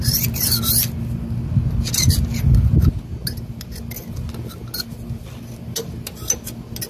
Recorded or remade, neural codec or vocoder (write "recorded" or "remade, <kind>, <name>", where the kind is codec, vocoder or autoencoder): recorded